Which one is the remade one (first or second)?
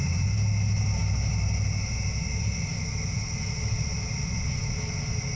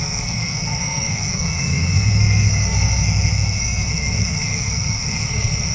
second